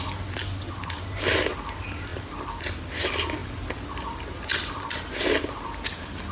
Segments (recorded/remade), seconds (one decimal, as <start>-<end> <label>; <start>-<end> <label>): 0.0-6.3 recorded